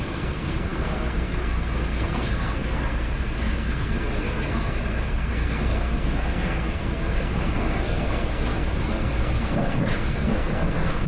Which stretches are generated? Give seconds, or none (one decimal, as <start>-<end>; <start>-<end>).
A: 0.0-11.1